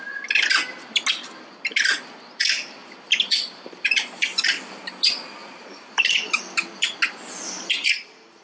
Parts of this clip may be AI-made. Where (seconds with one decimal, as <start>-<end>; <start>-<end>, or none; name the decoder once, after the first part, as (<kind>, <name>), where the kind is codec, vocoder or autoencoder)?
2.8-4.8 (vocoder, BigVGAN v2); 5.4-6.4